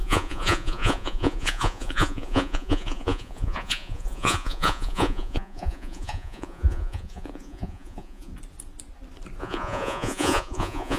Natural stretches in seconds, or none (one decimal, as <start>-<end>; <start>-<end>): 8.3-9.4